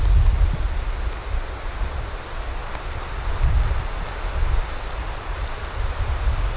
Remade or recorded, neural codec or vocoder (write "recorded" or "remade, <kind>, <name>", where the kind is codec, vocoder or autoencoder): recorded